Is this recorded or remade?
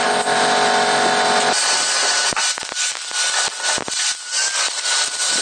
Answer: recorded